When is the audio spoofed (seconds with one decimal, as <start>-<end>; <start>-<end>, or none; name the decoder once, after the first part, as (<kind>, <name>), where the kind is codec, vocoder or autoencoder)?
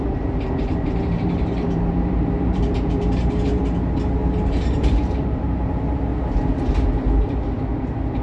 0.0-6.1 (vocoder, BigVGAN v2); 7.1-8.2